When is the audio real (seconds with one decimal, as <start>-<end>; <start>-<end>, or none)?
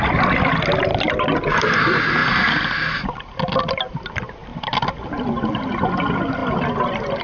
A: 0.0-7.2